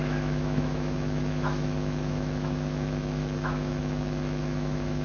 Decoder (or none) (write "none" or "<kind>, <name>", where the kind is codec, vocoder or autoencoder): autoencoder, DAC-VAE